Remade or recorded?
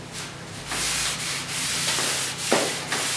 recorded